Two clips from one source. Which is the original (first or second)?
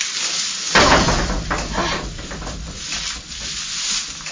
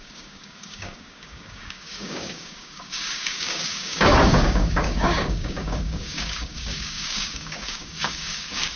first